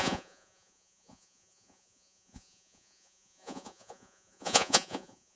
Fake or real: fake